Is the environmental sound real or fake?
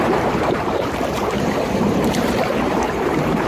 fake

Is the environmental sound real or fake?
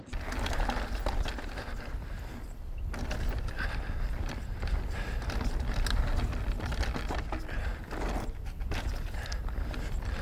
real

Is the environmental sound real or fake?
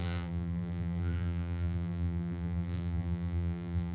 fake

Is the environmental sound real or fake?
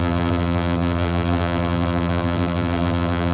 fake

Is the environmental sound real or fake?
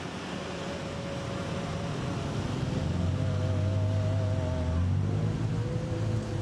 real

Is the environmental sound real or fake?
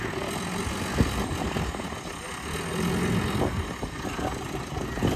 real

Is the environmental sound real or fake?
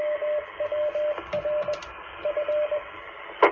real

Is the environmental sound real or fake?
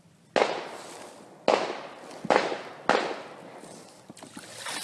real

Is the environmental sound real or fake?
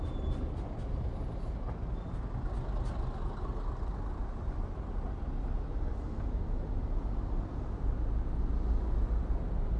real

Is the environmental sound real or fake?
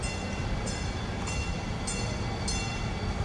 real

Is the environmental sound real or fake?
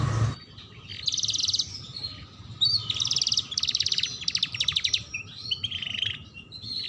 real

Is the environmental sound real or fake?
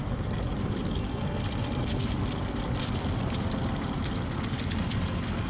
fake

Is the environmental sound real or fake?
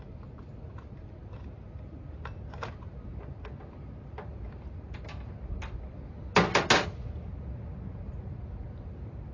real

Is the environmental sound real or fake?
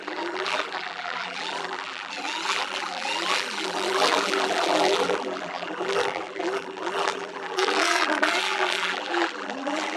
fake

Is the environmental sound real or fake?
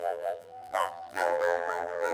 fake